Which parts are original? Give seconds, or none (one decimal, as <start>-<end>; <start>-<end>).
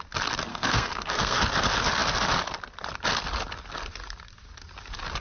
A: 0.0-0.5; 1.4-5.2